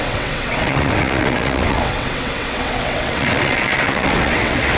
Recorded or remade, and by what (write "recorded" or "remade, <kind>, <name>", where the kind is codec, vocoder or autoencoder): remade, vocoder, WaveNeXt